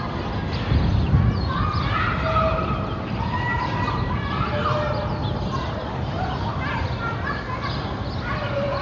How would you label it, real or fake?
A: real